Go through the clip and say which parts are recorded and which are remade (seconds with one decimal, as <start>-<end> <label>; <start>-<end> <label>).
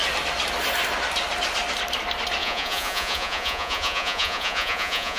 0.0-2.4 recorded; 2.4-5.2 remade